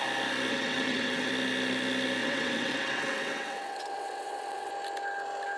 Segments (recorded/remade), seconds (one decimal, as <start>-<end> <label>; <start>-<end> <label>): 0.0-0.5 recorded; 0.5-1.3 remade; 1.3-2.2 recorded; 2.2-4.7 remade; 4.7-5.6 recorded